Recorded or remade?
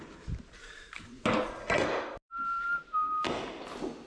recorded